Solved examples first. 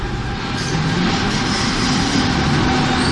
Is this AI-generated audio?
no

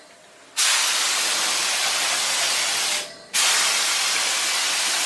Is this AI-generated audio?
no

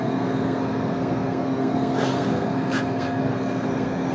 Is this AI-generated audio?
yes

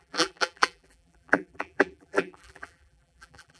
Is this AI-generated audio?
yes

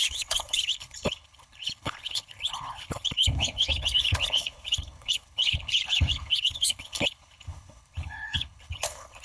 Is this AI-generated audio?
yes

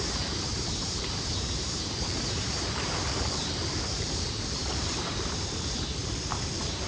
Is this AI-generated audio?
yes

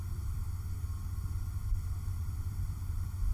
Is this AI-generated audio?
yes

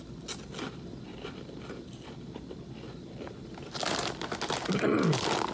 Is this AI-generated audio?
no